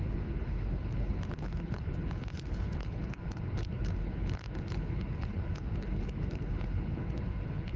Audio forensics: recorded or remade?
remade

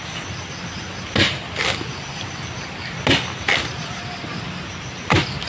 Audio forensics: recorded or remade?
recorded